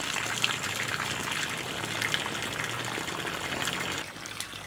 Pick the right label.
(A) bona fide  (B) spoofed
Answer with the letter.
A